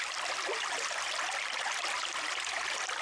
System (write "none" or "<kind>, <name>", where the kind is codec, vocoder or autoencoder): none